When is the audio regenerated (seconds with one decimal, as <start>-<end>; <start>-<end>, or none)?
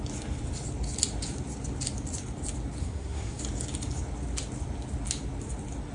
2.8-3.4